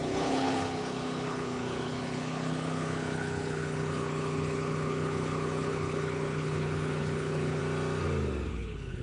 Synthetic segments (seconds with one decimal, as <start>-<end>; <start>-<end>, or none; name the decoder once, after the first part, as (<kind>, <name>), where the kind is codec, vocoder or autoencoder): 0.0-7.6 (codec, HILCodec); 8.5-9.0